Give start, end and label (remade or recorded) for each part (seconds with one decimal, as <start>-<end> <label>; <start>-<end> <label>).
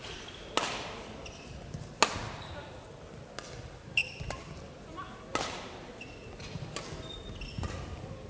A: 0.0-8.3 recorded